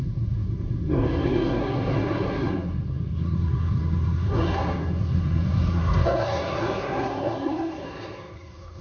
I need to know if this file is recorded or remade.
remade